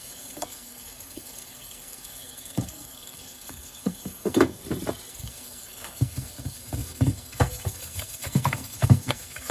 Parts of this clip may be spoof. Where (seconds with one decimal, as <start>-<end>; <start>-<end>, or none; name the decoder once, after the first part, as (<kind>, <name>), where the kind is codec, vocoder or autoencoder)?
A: 0.0-4.6 (codec, SNAC); 5.1-9.5

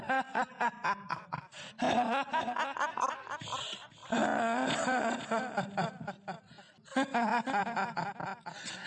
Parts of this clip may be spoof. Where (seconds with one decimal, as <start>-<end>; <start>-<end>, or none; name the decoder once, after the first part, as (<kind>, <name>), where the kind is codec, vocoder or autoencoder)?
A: 7.6-8.1 (vocoder, BigVGAN v2)

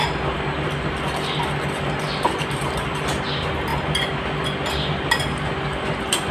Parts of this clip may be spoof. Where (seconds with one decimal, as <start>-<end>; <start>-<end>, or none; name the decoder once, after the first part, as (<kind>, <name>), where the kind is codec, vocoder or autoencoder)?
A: none

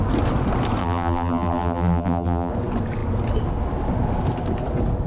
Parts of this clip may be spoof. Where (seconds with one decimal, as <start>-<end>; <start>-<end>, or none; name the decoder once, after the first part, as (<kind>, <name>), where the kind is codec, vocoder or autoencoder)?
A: 0.8-2.5 (vocoder, BigVGAN v2)

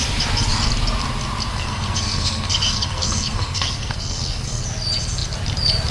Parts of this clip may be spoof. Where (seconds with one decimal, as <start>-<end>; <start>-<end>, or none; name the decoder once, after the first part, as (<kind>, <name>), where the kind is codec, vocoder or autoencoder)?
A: 1.5-4.6 (codec, SNAC)

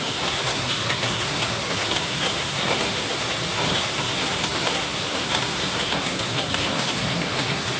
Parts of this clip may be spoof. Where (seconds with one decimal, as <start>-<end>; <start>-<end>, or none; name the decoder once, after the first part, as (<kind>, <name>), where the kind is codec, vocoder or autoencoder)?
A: 0.0-7.8 (codec, SNAC)

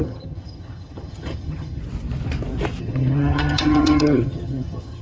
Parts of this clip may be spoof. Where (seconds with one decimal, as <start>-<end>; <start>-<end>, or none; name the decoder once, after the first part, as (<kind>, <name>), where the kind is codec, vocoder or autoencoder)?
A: 0.0-1.8 (vocoder, HiFi-GAN); 2.8-5.0